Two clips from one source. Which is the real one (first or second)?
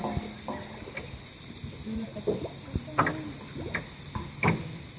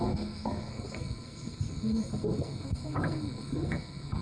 first